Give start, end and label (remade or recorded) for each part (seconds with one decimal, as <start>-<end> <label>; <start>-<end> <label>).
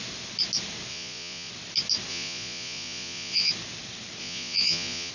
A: 0.0-0.9 recorded; 0.9-1.5 remade; 1.5-2.1 recorded; 2.1-3.5 remade; 3.5-4.2 recorded; 4.2-5.1 remade